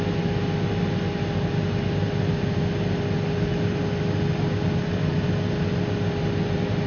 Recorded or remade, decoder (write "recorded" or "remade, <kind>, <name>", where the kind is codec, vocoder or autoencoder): recorded